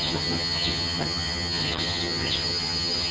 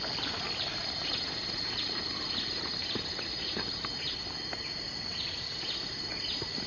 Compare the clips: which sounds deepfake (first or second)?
first